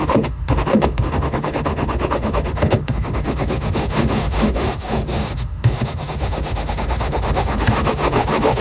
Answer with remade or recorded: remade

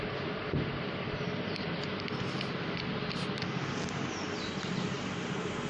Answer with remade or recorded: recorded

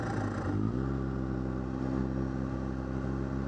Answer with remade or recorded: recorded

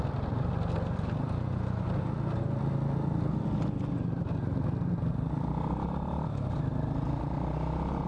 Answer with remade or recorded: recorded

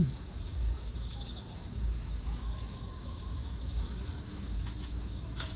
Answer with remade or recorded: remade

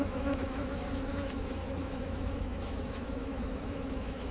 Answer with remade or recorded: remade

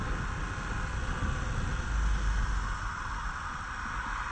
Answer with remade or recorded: recorded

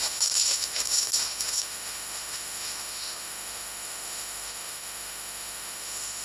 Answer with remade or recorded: remade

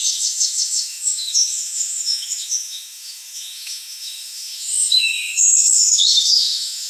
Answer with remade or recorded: remade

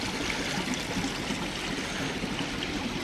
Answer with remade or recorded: recorded